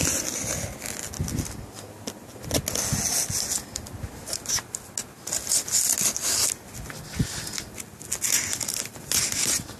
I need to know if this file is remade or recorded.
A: recorded